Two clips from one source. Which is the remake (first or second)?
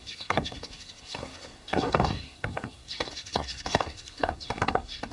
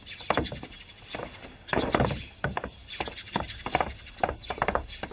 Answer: first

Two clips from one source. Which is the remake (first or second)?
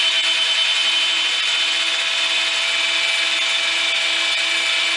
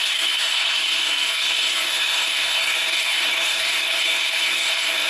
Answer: second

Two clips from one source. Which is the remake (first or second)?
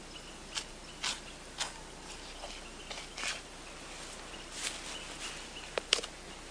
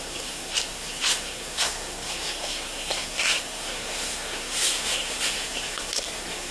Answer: second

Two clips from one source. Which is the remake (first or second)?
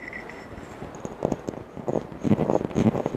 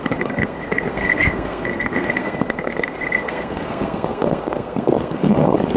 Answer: second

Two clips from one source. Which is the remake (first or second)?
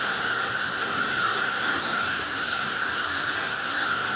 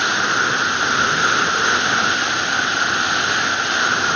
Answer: first